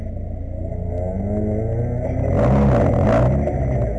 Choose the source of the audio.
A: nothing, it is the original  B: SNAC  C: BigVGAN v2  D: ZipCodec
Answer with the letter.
A